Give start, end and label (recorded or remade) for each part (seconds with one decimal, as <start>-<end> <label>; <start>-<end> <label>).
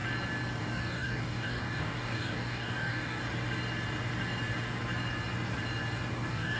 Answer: 0.0-0.6 recorded; 0.6-3.2 remade; 3.2-6.1 recorded; 6.1-6.6 remade